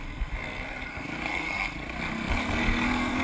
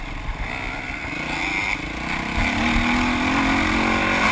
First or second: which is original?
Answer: second